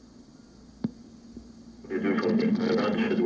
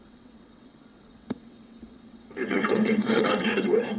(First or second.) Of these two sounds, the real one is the first